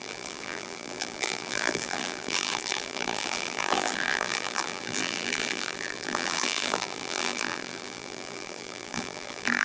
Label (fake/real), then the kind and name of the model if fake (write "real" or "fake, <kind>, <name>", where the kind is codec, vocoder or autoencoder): fake, vocoder, BigVGAN v2